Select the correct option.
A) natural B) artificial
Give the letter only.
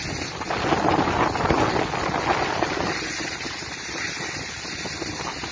A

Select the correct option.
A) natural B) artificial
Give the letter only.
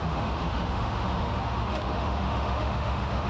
B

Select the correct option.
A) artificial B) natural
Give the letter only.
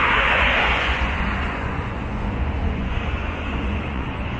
A